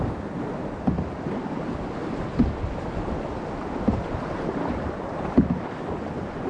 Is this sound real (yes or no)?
yes